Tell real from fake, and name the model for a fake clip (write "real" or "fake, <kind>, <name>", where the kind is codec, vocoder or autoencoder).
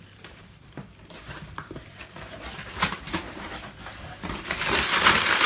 fake, vocoder, BigVGAN v2